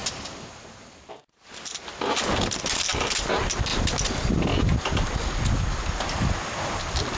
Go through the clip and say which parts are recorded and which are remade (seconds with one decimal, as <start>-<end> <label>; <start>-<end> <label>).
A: 0.0-7.2 recorded